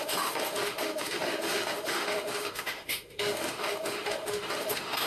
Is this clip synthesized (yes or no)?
yes